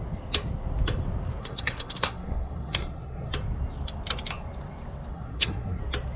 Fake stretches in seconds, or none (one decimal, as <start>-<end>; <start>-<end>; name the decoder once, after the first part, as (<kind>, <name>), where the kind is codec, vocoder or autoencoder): 1.4-3.3 (codec, SNAC); 5.1-5.8